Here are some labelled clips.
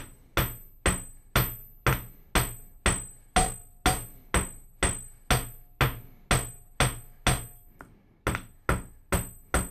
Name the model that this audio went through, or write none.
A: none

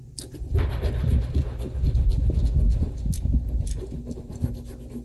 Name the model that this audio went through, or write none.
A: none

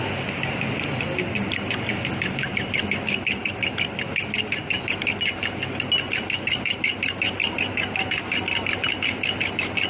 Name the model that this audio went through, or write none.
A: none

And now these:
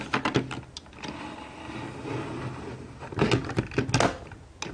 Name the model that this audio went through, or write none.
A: none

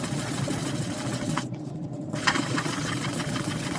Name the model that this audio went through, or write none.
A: vocoder, Vocos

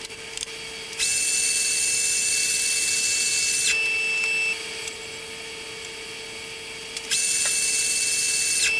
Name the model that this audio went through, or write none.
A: none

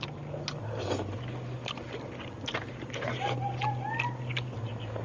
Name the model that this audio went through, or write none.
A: none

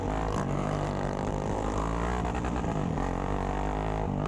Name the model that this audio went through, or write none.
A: none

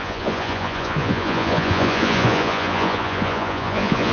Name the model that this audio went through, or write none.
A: vocoder, Vocos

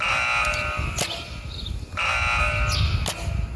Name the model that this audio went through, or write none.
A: none